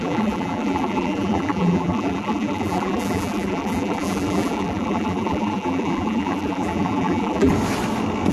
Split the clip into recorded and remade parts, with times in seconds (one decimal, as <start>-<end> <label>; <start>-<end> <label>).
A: 0.0-7.5 remade; 7.5-8.3 recorded